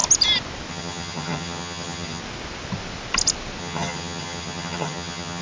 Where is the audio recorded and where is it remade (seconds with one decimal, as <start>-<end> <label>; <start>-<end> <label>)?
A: 0.0-0.7 recorded; 0.7-2.2 remade; 2.2-3.6 recorded; 3.6-5.4 remade